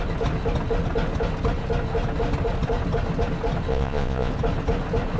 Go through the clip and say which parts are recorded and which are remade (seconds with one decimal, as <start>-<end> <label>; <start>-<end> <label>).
0.0-3.7 recorded; 3.7-4.3 remade; 4.3-5.2 recorded

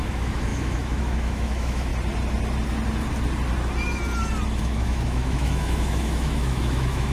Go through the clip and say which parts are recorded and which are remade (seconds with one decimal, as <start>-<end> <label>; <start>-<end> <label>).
0.0-1.9 remade; 1.9-4.6 recorded; 4.6-7.1 remade

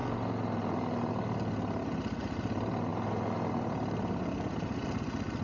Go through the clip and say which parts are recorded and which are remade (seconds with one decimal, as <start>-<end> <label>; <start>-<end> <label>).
0.0-2.9 recorded; 2.9-5.0 remade; 5.0-5.4 recorded